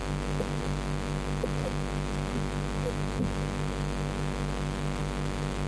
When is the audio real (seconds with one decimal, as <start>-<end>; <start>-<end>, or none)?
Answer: 0.0-5.7